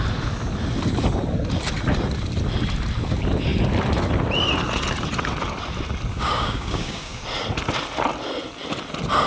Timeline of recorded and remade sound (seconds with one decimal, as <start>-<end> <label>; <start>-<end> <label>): 0.0-6.1 recorded; 6.1-7.2 remade; 7.2-9.3 recorded